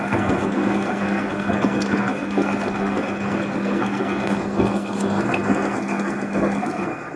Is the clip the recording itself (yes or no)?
no